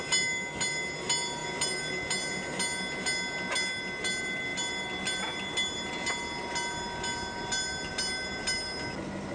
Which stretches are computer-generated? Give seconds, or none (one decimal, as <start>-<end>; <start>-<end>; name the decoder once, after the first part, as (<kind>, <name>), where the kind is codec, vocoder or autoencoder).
none